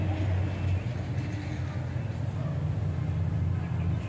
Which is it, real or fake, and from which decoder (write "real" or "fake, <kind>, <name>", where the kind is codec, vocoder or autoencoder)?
real